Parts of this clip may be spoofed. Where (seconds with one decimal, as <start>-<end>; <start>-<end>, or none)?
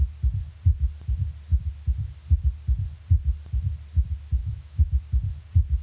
4.4-5.0